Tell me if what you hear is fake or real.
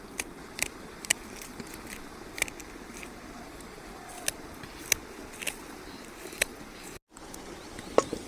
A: real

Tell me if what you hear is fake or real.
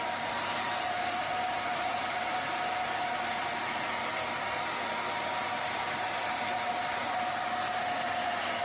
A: real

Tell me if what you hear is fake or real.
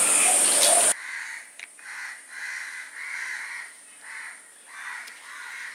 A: real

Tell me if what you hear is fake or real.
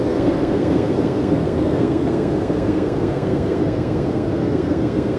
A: fake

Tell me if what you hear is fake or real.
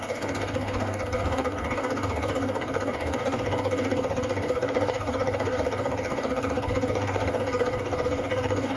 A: fake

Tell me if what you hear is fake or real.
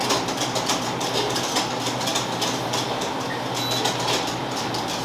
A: real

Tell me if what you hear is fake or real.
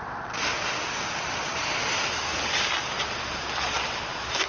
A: real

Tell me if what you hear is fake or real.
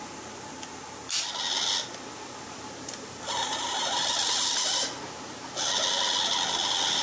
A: real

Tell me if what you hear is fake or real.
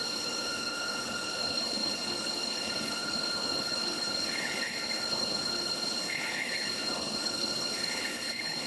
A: fake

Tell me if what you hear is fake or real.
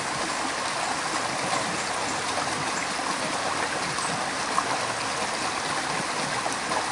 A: real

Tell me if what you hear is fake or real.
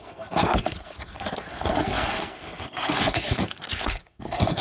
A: fake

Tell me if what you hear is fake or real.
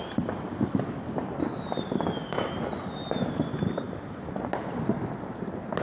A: real